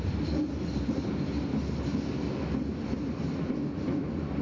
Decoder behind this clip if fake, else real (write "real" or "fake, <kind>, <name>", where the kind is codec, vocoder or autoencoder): real